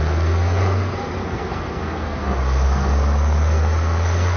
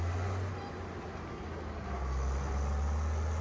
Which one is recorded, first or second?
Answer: second